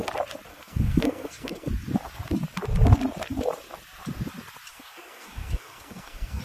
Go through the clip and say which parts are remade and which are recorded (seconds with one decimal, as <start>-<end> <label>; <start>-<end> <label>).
0.0-0.5 recorded; 0.5-1.7 remade; 1.7-4.7 recorded; 4.7-6.4 remade